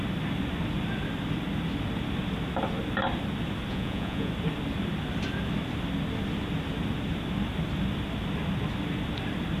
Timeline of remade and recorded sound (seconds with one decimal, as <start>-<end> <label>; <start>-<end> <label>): 0.0-3.7 recorded; 3.7-4.3 remade; 4.3-9.6 recorded